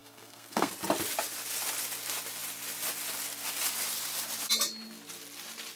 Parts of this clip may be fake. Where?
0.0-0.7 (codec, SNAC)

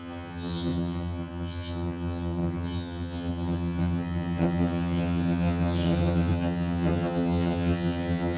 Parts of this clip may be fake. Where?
0.0-8.4 (vocoder, HiFi-GAN)

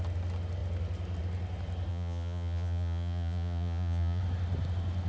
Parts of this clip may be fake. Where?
1.9-4.2 (vocoder, Vocos)

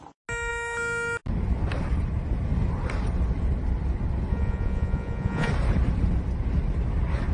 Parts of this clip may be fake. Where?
4.3-5.5 (vocoder, Vocos)